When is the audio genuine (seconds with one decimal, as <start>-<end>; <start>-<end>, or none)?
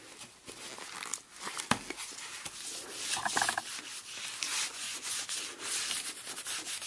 0.0-4.5; 5.2-6.9